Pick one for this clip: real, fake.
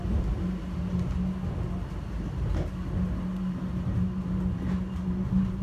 real